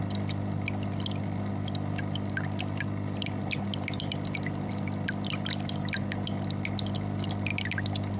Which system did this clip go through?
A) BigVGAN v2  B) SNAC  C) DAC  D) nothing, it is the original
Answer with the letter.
D